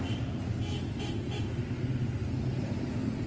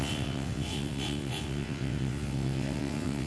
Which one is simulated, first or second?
second